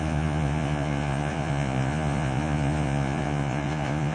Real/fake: fake